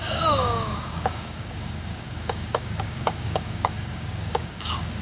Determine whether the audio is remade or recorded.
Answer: remade